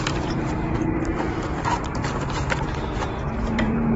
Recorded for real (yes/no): no